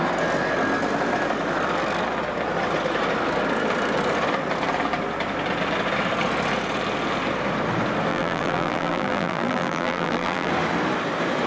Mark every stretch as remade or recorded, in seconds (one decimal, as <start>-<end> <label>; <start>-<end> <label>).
0.0-8.1 recorded; 8.1-10.5 remade; 10.5-11.5 recorded